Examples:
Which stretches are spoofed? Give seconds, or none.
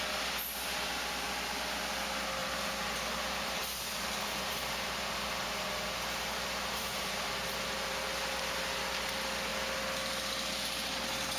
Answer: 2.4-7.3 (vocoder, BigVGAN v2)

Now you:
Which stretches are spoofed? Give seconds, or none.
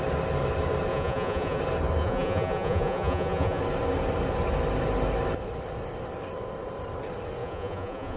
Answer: 0.9-1.6 (vocoder, Vocos); 2.0-3.6; 7.4-8.2